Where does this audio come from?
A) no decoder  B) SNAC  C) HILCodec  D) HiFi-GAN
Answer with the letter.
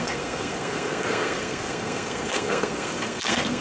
B